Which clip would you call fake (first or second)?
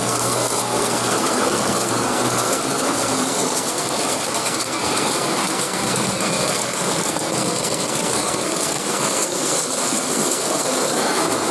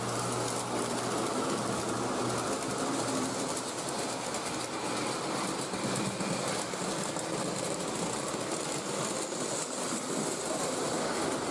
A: first